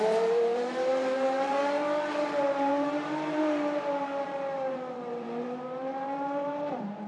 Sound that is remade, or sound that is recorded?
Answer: remade